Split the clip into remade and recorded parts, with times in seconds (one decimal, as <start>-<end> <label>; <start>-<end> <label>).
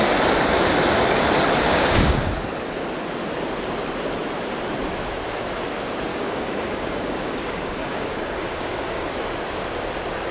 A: 0.0-1.7 recorded; 1.7-2.3 remade; 2.3-6.1 recorded; 6.1-9.1 remade; 9.1-10.3 recorded